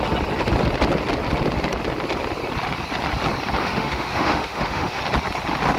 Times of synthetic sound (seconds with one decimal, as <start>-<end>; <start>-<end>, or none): 3.6-5.0